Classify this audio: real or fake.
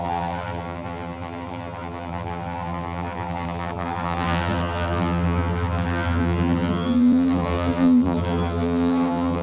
fake